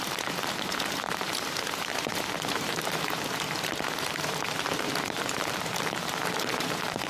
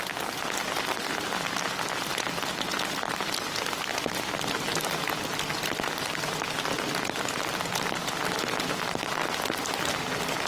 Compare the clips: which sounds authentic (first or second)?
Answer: second